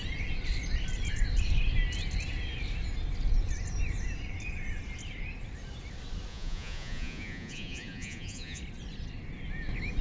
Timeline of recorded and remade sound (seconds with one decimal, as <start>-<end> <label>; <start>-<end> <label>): 0.0-6.3 recorded; 6.3-8.6 remade; 8.6-10.0 recorded